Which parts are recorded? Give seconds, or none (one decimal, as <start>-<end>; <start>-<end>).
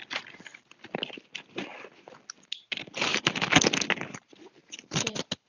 0.0-4.6; 5.1-5.5